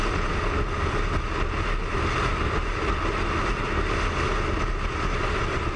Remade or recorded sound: recorded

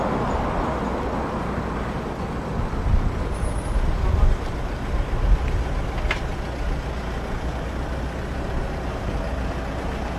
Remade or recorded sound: recorded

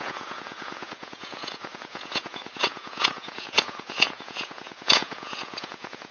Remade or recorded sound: remade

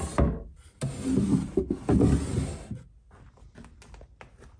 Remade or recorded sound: recorded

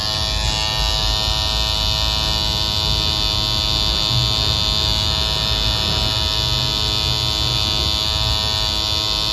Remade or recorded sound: recorded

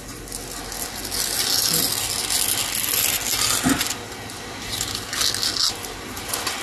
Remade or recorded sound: recorded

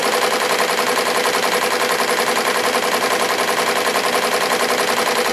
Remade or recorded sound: recorded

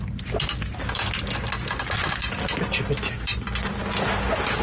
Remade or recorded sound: recorded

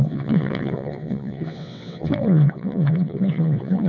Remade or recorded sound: remade